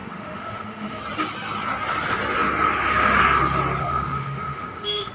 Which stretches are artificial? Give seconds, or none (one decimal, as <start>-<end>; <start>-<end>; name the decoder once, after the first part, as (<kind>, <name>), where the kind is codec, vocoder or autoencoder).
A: 0.0-1.0 (autoencoder, DAC-VAE); 3.8-5.1